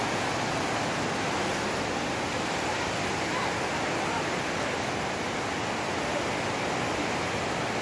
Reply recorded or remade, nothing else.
recorded